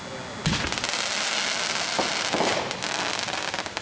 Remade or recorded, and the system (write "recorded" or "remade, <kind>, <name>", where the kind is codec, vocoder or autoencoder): recorded